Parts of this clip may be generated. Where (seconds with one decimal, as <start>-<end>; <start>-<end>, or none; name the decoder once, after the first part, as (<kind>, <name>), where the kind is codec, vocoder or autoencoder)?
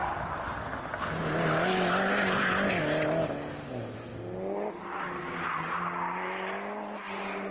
none